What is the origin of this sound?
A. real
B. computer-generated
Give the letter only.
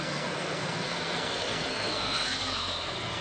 B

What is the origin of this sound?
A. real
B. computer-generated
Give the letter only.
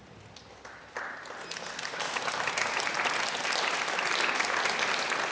A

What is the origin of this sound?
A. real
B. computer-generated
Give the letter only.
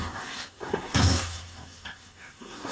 B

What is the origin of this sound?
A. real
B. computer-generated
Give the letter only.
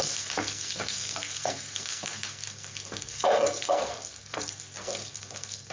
B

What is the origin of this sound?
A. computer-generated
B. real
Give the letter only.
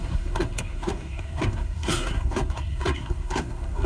A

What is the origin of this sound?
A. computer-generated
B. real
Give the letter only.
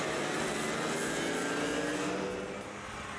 B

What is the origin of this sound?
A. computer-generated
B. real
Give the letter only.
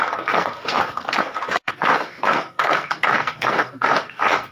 A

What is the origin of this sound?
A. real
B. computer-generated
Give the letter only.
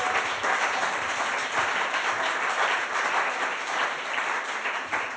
A